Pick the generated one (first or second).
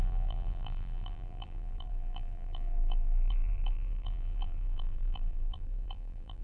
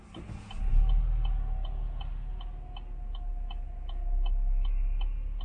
first